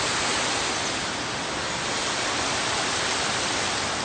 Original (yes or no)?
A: yes